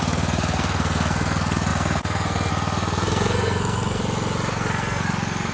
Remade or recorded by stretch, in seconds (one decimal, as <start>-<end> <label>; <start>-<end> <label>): 0.0-4.0 remade; 4.0-4.5 recorded; 4.5-5.5 remade